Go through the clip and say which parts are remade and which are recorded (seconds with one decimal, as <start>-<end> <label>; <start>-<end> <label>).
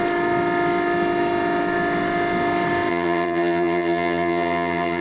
0.0-2.9 recorded; 2.9-5.0 remade